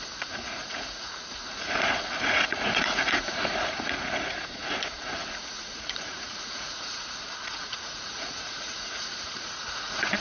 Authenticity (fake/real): fake